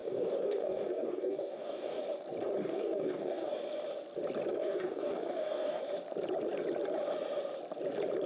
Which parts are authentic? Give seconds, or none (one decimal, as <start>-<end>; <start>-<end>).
2.0-2.6; 3.5-4.6; 5.8-8.3